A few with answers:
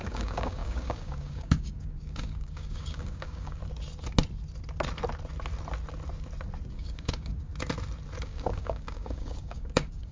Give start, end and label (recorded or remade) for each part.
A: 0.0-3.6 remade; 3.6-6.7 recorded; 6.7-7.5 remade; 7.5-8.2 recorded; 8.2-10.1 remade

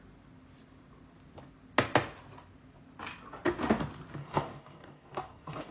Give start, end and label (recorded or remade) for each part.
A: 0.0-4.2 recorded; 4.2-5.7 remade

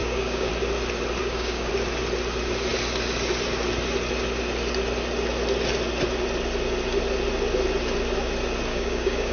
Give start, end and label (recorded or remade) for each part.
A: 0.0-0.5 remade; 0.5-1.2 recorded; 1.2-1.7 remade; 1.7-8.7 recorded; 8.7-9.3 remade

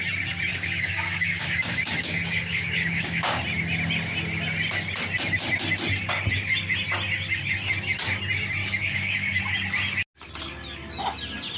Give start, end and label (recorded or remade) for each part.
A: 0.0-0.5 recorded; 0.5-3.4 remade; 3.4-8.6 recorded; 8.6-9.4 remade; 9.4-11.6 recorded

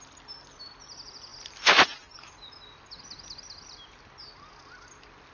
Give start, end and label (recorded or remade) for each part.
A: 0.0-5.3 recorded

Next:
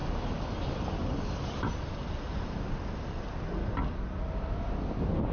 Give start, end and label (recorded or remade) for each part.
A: 0.0-5.3 recorded